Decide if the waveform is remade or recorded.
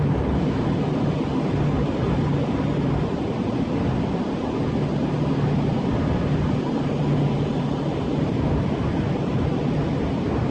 recorded